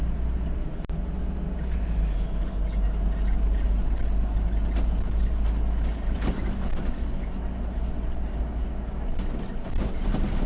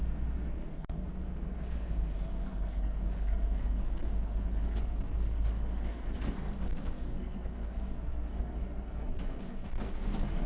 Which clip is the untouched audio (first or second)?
first